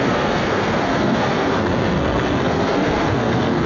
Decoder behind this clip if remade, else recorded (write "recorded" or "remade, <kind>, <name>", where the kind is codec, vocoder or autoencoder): remade, codec, SNAC